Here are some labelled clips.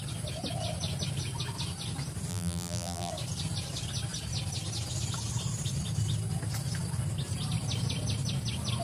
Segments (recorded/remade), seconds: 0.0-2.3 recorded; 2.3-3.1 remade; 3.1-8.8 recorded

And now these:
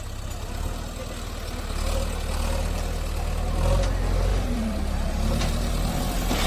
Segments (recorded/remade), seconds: 0.0-4.3 recorded; 4.3-6.0 remade; 6.0-6.5 recorded